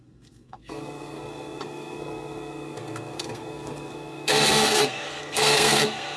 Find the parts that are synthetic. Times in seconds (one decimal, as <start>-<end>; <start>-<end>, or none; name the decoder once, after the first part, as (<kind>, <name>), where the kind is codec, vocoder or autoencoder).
0.0-6.2 (codec, SNAC)